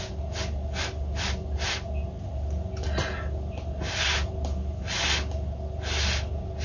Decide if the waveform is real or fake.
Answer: real